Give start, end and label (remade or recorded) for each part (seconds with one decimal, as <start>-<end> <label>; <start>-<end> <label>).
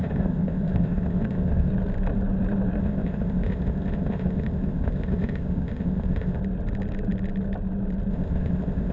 0.0-1.7 remade; 1.7-2.8 recorded; 2.8-6.4 remade; 6.4-8.1 recorded; 8.1-8.9 remade